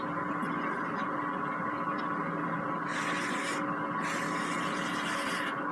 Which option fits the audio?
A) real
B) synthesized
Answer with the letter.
A